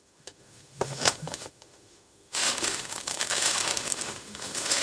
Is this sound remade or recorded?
remade